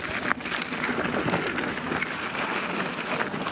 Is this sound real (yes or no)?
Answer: yes